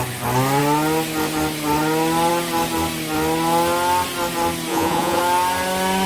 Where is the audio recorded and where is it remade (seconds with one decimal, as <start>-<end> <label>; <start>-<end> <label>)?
0.0-4.7 recorded; 4.7-5.2 remade; 5.2-6.1 recorded